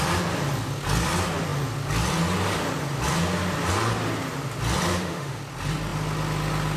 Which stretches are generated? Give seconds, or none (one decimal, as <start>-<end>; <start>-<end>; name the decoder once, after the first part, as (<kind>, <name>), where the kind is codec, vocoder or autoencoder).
4.9-5.4 (autoencoder, DAC-VAE)